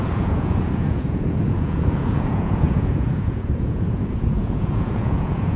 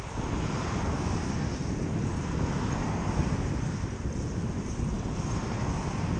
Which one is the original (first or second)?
second